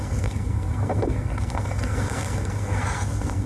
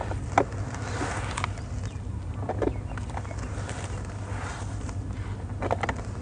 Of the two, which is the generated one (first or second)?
first